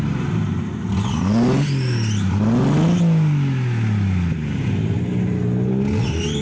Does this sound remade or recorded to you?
recorded